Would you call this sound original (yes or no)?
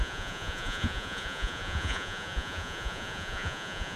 no